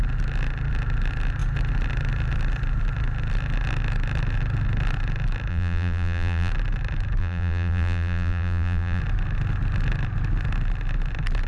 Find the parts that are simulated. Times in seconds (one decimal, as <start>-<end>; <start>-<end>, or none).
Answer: 5.5-6.5; 7.2-9.0